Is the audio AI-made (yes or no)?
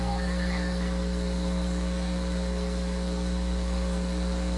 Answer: yes